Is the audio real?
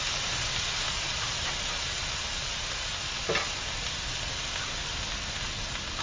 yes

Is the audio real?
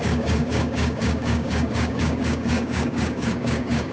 no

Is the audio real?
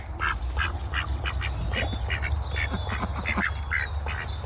yes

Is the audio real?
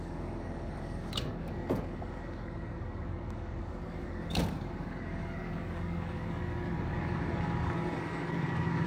no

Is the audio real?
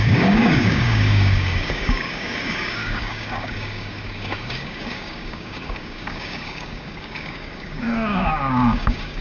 no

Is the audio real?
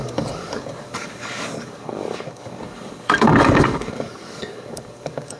no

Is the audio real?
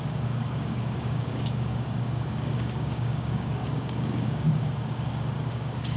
no